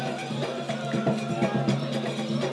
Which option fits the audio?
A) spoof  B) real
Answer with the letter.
B